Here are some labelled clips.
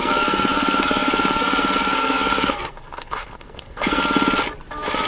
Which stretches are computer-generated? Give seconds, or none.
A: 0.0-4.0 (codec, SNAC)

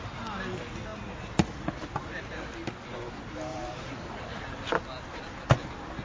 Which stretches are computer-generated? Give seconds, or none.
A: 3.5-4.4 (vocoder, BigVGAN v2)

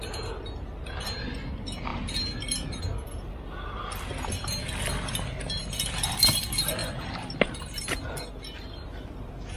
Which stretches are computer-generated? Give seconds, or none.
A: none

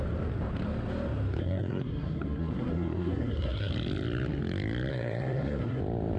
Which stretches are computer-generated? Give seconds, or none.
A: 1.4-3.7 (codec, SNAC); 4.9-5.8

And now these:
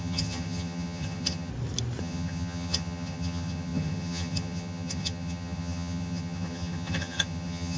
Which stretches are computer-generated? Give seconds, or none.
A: 0.0-1.5 (vocoder, HiFi-GAN); 2.0-7.8

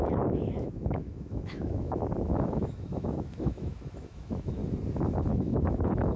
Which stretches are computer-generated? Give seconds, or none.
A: 0.0-4.6 (autoencoder, DAC-VAE); 5.3-6.2

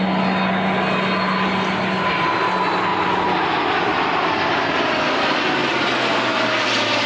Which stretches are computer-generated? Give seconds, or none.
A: none